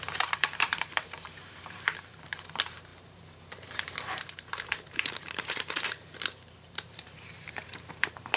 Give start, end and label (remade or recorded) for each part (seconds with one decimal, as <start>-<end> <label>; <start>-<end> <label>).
0.0-8.4 remade